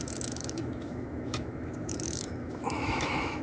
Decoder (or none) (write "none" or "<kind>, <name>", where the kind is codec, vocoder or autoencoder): autoencoder, DAC-VAE